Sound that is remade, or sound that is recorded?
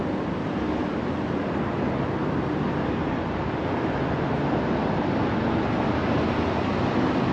recorded